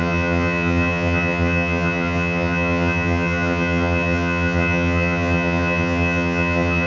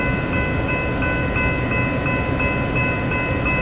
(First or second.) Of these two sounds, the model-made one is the first